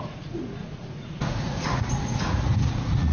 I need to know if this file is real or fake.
fake